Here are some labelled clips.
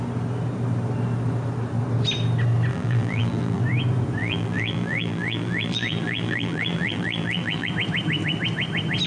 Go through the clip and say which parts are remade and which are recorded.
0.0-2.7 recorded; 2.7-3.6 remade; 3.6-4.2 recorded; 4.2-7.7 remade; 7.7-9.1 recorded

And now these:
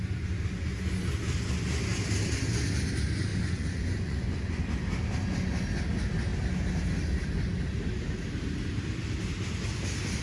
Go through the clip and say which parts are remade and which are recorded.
0.0-3.3 recorded; 3.3-4.6 remade; 4.6-10.2 recorded

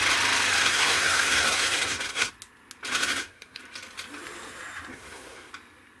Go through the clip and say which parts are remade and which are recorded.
0.0-0.6 recorded; 0.6-2.3 remade; 2.3-2.9 recorded; 2.9-3.6 remade; 3.6-4.9 recorded; 4.9-5.5 remade; 5.5-6.0 recorded